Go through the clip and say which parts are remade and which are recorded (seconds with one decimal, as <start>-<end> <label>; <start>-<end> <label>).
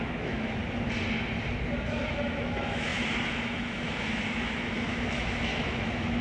0.0-0.6 remade; 0.6-2.0 recorded; 2.0-6.2 remade